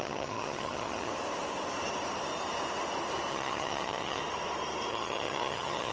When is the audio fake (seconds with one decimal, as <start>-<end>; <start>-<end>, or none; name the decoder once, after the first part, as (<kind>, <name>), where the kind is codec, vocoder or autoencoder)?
0.0-1.1 (vocoder, HiFi-GAN); 3.3-4.2; 4.9-5.9